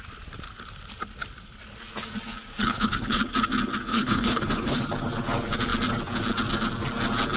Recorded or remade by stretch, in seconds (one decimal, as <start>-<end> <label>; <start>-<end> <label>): 0.0-2.5 recorded; 2.5-3.2 remade; 3.2-3.9 recorded; 3.9-4.8 remade; 4.8-7.4 recorded